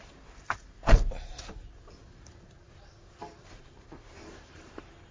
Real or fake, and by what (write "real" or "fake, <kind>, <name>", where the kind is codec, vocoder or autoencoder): fake, vocoder, BigVGAN v2